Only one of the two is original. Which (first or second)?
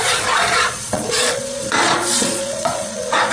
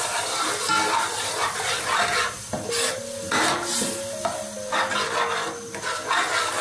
second